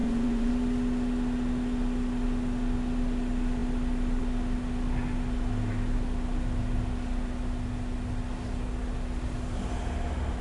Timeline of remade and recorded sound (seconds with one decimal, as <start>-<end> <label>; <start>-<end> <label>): 0.0-0.5 remade; 0.5-10.4 recorded